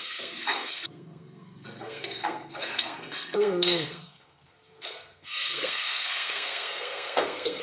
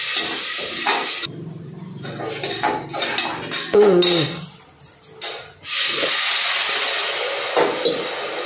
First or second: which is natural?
second